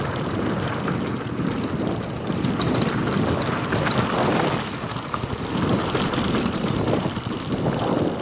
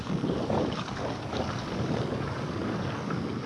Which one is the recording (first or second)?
first